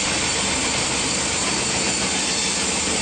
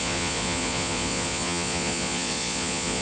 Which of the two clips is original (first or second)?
first